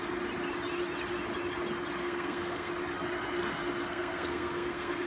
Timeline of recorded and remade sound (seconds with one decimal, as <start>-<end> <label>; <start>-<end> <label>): 0.0-2.0 recorded; 2.0-2.7 remade; 2.7-3.8 recorded; 3.8-5.1 remade